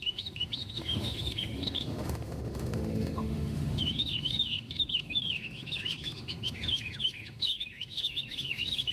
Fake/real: fake